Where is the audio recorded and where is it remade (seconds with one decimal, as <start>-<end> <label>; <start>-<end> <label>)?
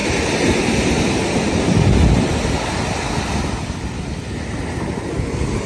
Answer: 0.0-5.7 recorded